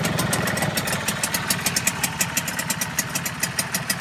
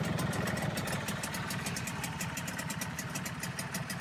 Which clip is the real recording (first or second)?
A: first